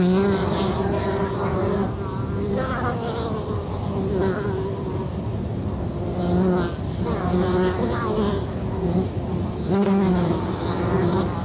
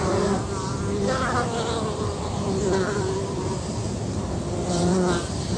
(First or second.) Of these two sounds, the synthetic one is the second